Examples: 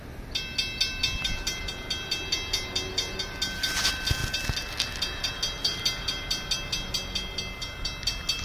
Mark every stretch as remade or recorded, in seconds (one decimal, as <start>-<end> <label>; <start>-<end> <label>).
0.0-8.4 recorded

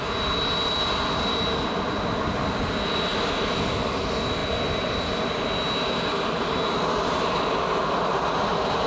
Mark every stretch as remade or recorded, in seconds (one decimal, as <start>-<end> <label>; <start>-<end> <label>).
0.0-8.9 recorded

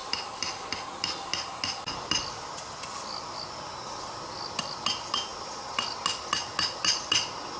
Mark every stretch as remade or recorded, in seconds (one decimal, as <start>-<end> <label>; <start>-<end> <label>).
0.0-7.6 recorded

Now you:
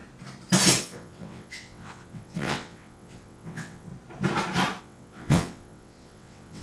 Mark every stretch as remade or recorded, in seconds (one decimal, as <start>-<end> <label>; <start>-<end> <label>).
0.0-0.8 recorded; 0.8-3.9 remade; 3.9-4.8 recorded; 4.8-6.6 remade

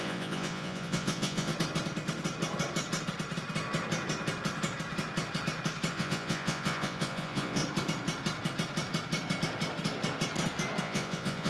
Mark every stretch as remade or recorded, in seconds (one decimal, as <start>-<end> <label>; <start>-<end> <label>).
0.0-1.5 remade; 1.5-5.9 recorded; 5.9-7.6 remade; 7.6-10.8 recorded; 10.8-11.5 remade

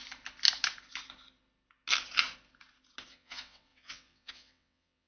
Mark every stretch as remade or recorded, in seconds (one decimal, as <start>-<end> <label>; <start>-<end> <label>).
0.0-3.1 recorded; 3.1-5.1 remade

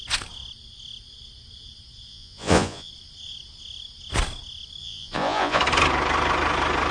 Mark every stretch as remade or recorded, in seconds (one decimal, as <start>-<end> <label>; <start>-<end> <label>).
0.0-2.1 recorded; 2.1-2.9 remade; 2.9-4.8 recorded; 4.8-5.6 remade; 5.6-6.9 recorded